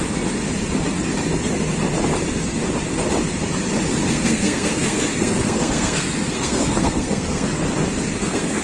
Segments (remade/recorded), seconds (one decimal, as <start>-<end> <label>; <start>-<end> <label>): 0.0-4.1 recorded; 4.1-7.6 remade; 7.6-8.2 recorded; 8.2-8.6 remade